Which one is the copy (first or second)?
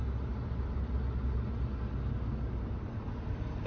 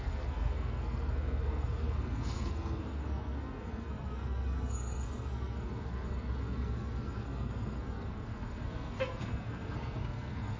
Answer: second